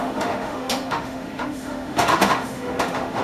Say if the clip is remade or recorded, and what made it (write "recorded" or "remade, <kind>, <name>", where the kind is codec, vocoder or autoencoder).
remade, autoencoder, DAC-VAE